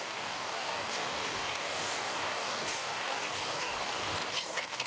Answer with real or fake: fake